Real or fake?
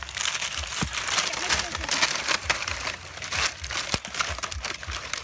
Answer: real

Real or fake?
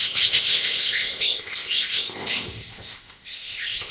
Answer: fake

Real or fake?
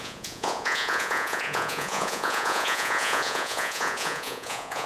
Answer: fake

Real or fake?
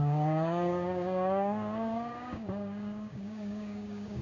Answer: fake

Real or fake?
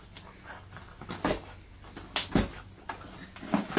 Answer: real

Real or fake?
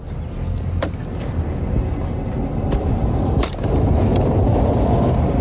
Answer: real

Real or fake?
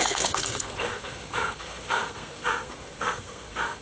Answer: fake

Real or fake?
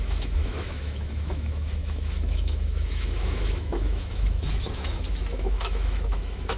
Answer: fake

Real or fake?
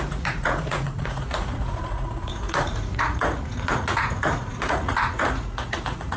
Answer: fake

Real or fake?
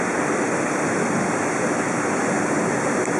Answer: real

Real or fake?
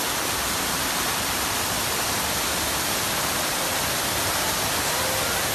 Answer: real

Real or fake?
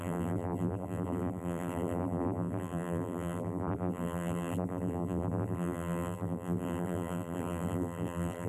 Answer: fake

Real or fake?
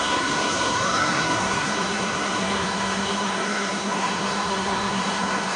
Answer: fake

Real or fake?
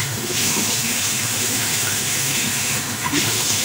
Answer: fake